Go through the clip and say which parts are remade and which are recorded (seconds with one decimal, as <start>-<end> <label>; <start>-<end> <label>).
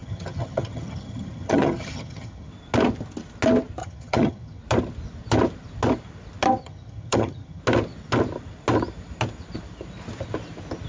0.0-2.5 remade; 2.5-3.8 recorded; 3.8-4.6 remade; 4.6-6.6 recorded; 6.6-7.6 remade; 7.6-10.9 recorded